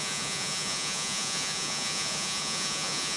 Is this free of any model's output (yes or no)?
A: no